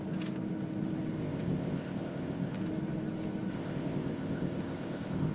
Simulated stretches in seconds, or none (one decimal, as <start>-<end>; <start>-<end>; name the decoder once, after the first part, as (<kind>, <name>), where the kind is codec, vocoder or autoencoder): 1.2-2.6 (codec, ZipCodec); 3.5-5.3